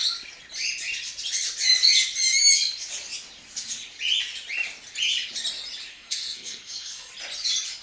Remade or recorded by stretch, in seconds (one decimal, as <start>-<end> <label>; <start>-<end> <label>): 0.0-5.9 recorded; 5.9-7.1 remade; 7.1-7.8 recorded